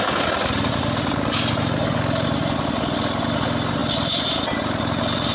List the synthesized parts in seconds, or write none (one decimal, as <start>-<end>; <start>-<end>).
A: none